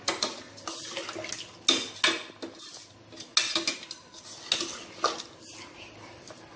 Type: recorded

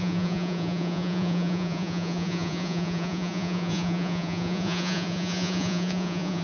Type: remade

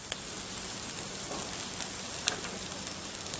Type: recorded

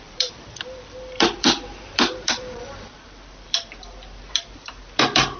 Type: remade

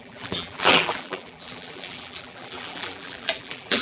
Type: remade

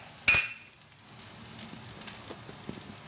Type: recorded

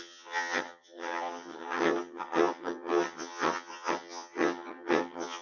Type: remade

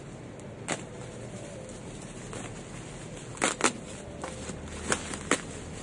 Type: recorded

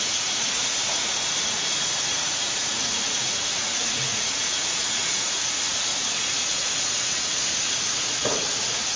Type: remade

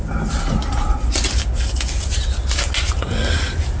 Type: recorded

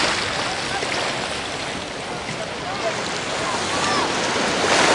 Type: recorded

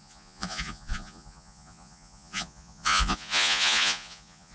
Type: remade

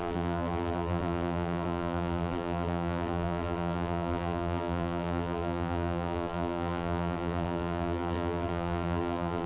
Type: remade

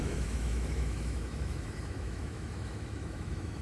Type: remade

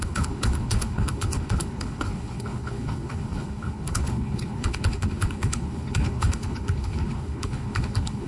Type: remade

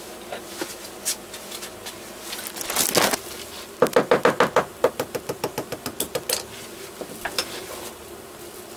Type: recorded